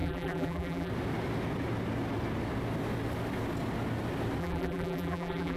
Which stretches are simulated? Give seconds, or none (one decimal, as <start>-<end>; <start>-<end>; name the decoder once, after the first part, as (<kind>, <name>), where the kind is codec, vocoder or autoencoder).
0.0-0.9 (vocoder, BigVGAN v2); 4.4-5.6